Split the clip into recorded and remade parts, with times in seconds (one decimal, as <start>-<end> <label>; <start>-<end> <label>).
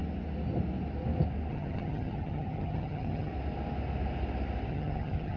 0.0-1.5 recorded; 1.5-3.3 remade; 3.3-4.7 recorded; 4.7-5.4 remade